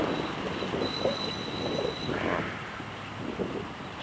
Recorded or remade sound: recorded